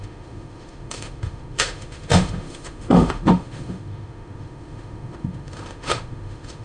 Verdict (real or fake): fake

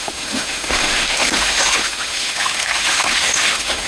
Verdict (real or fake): fake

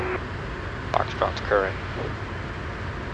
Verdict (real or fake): real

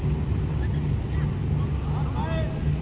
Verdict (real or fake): real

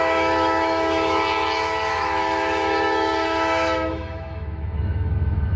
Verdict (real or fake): fake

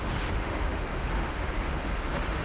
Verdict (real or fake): fake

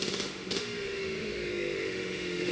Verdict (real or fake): fake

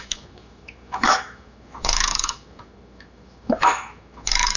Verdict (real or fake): fake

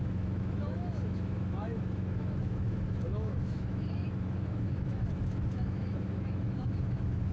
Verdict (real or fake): fake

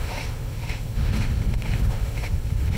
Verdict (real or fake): fake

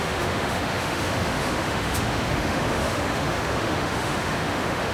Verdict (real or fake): fake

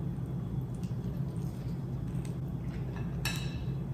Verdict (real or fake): real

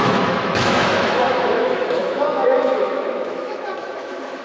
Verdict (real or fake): fake